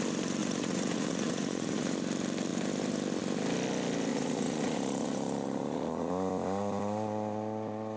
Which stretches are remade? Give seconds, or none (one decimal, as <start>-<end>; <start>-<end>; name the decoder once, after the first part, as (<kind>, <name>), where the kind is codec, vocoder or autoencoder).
0.4-1.9 (vocoder, Vocos); 4.1-6.1